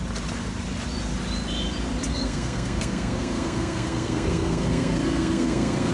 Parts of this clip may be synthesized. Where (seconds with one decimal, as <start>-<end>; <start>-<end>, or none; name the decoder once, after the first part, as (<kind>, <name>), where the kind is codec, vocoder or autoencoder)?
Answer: 2.1-5.9 (codec, SNAC)